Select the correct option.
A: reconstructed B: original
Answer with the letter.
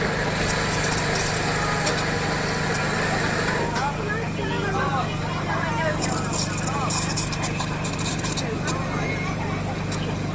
B